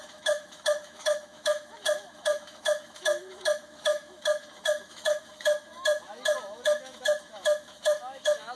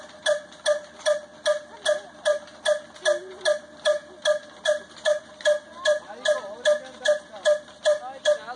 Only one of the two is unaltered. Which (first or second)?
second